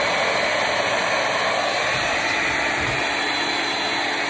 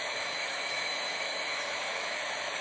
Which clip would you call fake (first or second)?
second